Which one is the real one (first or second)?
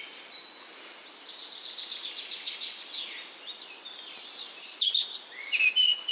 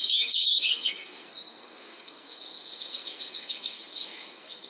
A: first